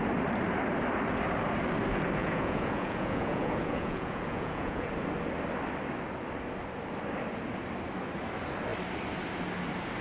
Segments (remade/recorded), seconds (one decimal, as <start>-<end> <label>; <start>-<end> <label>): 0.0-2.2 recorded; 2.2-4.9 remade; 4.9-10.0 recorded